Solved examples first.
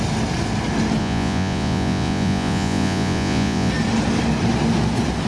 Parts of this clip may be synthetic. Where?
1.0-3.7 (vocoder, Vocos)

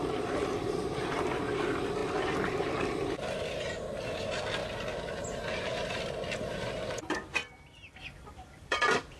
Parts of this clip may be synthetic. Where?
0.0-2.0 (vocoder, BigVGAN v2); 2.8-4.6; 5.2-9.2

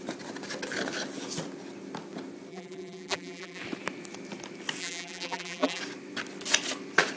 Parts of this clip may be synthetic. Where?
2.5-3.6 (vocoder, BigVGAN v2); 4.8-5.8

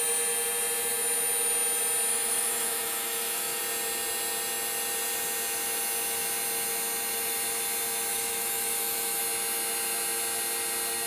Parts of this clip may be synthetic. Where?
2.1-3.6 (autoencoder, DAC-VAE); 8.1-9.2